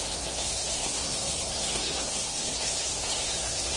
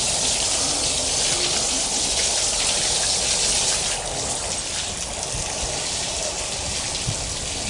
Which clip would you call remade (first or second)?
first